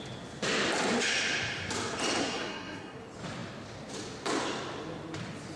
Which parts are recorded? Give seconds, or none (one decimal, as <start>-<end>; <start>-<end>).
0.0-2.2; 3.0-5.6